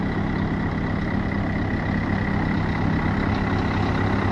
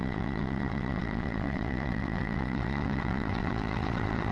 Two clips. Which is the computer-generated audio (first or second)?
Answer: second